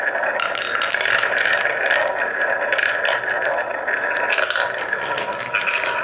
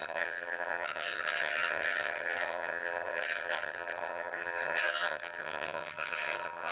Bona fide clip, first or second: first